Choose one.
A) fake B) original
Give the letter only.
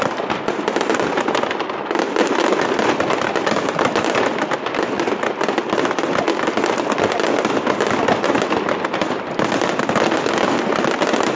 B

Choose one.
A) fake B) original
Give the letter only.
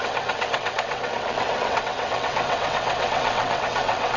A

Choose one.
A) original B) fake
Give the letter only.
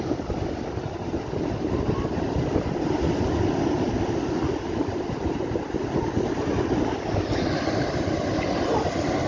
A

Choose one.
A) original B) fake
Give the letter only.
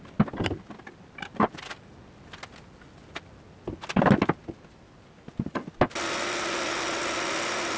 A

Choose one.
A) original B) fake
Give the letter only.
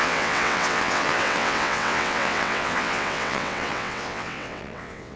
B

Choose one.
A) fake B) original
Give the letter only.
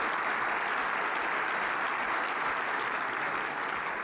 B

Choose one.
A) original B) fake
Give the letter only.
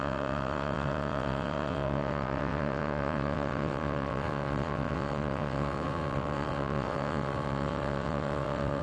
B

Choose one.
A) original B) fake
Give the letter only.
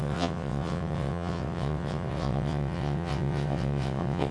B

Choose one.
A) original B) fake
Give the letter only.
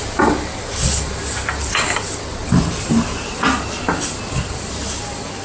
A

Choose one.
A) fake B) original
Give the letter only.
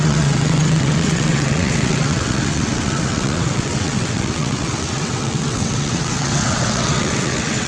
A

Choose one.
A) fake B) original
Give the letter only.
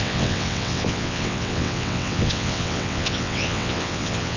A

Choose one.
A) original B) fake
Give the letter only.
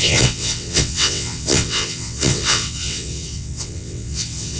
B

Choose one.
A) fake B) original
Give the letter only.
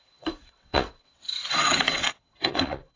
A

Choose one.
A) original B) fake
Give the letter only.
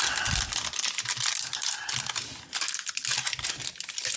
A